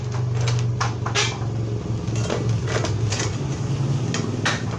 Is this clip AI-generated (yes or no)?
no